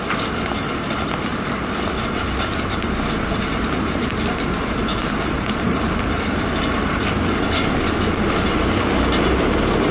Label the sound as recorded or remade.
remade